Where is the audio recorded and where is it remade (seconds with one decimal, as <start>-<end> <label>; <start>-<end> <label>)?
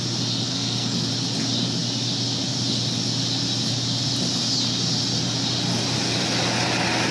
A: 0.0-0.5 recorded; 0.5-1.1 remade; 1.1-7.1 recorded